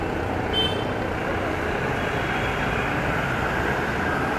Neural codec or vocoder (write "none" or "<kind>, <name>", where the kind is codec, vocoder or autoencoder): none